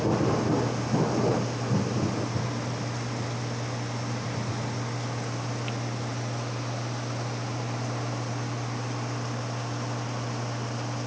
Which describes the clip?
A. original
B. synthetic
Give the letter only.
A